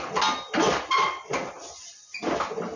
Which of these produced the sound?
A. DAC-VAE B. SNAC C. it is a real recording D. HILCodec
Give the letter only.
C